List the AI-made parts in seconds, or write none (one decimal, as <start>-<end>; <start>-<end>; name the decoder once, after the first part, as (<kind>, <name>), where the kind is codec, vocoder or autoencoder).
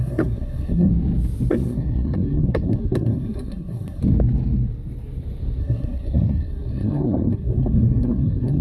0.0-0.9 (codec, SNAC); 1.5-4.0; 5.6-8.6